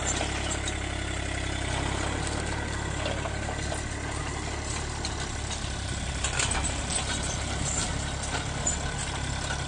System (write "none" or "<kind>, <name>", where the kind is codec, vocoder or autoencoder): none